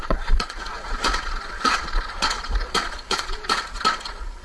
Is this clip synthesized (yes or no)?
yes